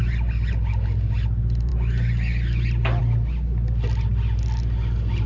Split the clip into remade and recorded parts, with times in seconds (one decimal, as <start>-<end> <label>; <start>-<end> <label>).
0.0-5.3 recorded